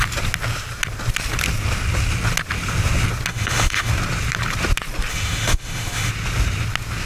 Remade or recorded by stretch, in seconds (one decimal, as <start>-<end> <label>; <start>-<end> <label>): 0.0-3.3 recorded; 3.3-3.9 remade; 3.9-5.1 recorded; 5.1-6.1 remade; 6.1-7.1 recorded